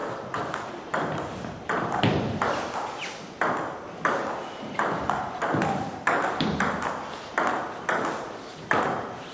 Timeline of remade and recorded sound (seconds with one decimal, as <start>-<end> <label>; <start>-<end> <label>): 0.0-9.3 recorded